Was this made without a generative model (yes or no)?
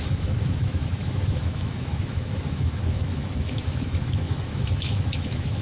no